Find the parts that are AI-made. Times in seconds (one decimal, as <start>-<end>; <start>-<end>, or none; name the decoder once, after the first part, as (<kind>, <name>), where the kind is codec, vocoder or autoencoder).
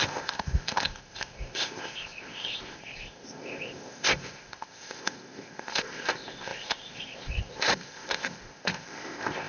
0.0-9.5 (codec, ZipCodec)